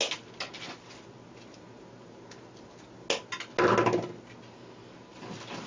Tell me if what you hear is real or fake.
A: real